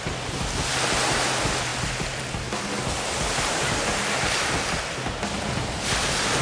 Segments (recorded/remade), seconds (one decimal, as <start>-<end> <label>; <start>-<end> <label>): 0.0-6.4 recorded

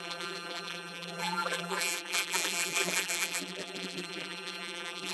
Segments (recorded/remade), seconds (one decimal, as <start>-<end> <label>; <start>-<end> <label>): 0.0-5.1 remade

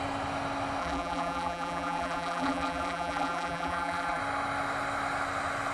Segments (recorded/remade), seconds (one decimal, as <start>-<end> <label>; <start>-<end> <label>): 0.0-0.8 recorded; 0.8-4.2 remade; 4.2-5.7 recorded

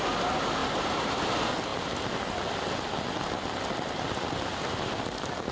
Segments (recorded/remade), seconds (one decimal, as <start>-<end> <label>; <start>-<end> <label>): 0.0-0.6 recorded; 0.6-1.2 remade; 1.2-5.5 recorded

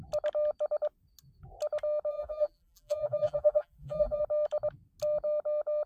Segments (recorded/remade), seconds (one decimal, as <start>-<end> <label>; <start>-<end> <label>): 0.0-2.1 recorded; 2.1-4.2 remade; 4.2-5.9 recorded